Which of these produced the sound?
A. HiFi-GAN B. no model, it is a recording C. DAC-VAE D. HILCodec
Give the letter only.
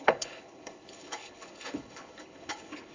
D